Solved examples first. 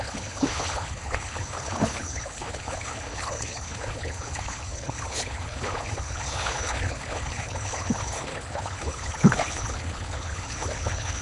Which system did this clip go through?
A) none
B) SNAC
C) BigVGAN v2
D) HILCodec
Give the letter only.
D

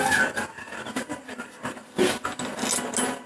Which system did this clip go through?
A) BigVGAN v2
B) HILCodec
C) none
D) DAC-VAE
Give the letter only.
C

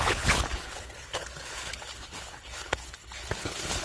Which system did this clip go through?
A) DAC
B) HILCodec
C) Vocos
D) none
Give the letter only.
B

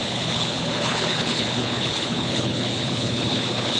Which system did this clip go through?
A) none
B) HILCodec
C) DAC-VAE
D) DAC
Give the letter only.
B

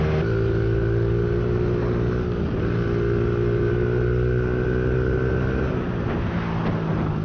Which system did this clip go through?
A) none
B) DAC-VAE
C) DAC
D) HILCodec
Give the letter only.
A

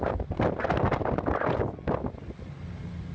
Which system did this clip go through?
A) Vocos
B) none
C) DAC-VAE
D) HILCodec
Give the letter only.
B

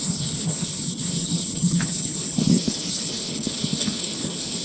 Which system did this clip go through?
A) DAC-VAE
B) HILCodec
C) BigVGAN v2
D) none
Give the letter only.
B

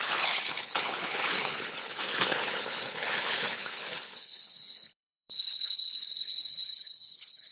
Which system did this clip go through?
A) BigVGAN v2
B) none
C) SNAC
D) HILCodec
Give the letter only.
D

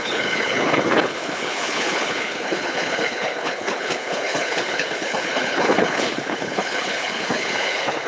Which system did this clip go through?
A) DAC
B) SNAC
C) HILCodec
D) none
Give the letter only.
C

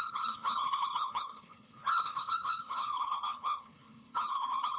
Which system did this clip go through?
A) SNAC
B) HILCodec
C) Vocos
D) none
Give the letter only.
B